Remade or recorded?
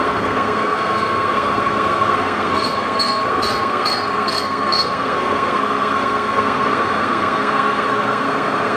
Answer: remade